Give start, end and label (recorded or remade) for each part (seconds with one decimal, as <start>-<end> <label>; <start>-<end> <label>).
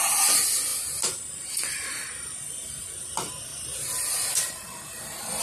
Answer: 0.0-5.4 recorded